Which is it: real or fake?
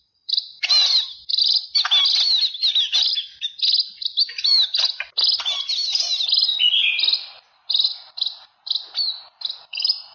real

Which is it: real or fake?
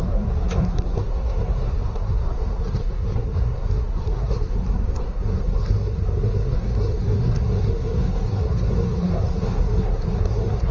fake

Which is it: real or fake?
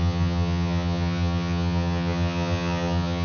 fake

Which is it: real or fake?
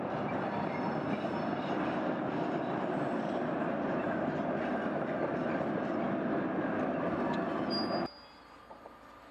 real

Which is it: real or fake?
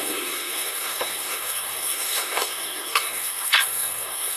fake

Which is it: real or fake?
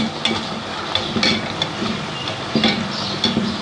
real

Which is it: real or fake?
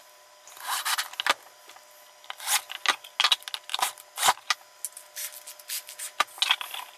real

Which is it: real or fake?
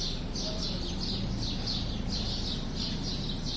real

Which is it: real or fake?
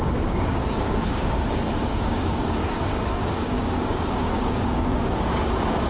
fake